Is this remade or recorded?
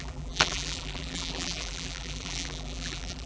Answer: remade